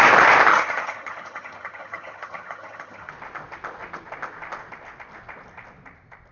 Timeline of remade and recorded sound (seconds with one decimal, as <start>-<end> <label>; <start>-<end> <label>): 0.0-0.5 recorded; 0.5-3.1 remade; 3.1-6.3 recorded